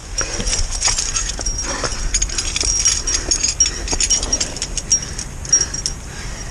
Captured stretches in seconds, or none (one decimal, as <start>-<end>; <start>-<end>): 1.3-6.5

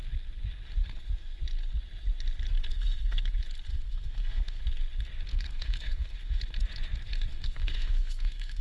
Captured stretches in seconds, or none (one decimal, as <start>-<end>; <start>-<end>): 0.0-2.7; 3.3-3.7; 4.6-5.3; 6.4-7.3

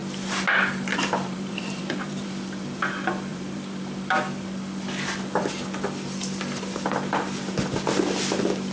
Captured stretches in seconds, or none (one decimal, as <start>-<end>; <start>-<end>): 0.0-0.9; 2.3-3.3; 3.8-8.7

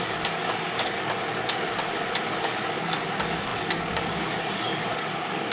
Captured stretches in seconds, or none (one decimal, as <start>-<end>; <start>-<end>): 1.7-2.3

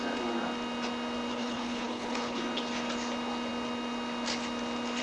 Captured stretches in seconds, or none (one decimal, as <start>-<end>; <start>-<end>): 0.0-1.3; 2.4-5.0

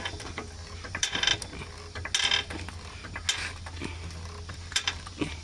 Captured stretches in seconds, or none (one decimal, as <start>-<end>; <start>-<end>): 0.4-0.9; 1.3-4.5

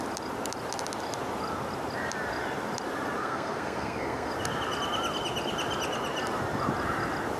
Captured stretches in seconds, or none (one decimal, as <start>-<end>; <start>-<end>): 0.0-3.2; 4.3-7.4

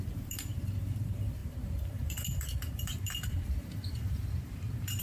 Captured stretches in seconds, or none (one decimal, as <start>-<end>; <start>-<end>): none